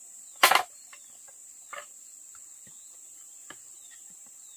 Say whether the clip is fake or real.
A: real